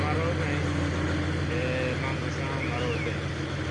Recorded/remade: recorded